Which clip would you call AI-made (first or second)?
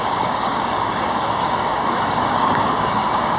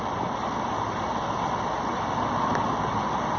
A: first